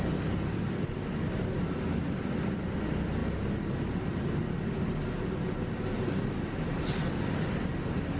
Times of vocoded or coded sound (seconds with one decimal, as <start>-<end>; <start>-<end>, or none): 0.0-3.2